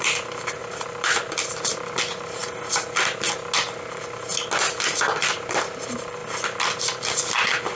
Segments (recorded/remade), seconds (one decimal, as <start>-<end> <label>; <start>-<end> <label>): 0.0-2.4 remade; 2.4-4.7 recorded; 4.7-6.2 remade; 6.2-6.8 recorded; 6.8-7.8 remade